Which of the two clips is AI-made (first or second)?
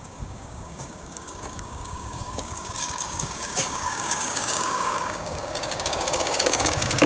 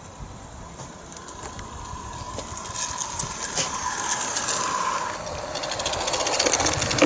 first